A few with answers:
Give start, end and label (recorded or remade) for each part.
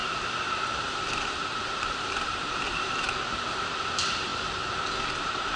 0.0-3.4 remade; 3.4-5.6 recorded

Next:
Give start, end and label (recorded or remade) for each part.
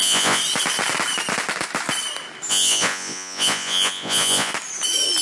0.0-0.4 remade; 0.4-2.5 recorded; 2.5-4.5 remade; 4.5-5.2 recorded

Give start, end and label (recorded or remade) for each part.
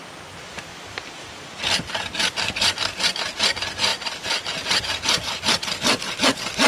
0.0-0.7 recorded; 0.7-1.5 remade; 1.5-3.9 recorded; 3.9-4.8 remade; 4.8-6.7 recorded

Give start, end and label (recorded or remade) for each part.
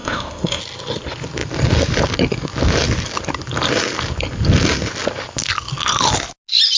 0.0-0.6 remade; 0.6-6.8 recorded